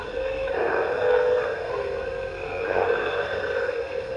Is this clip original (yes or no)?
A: no